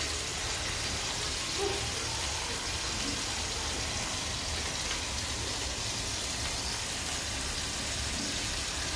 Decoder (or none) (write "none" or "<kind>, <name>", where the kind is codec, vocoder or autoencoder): none